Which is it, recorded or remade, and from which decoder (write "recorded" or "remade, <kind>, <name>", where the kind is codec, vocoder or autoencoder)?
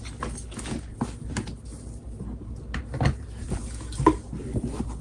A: recorded